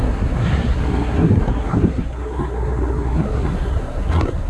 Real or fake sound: fake